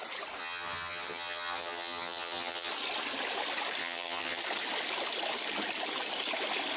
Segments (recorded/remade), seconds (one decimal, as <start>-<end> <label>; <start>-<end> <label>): 0.0-0.4 recorded; 0.4-2.7 remade; 2.7-3.8 recorded; 3.8-4.4 remade; 4.4-6.8 recorded